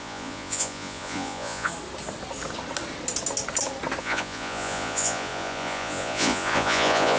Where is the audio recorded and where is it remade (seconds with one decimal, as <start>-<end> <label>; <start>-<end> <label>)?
0.0-1.7 remade; 1.7-4.0 recorded; 4.0-7.2 remade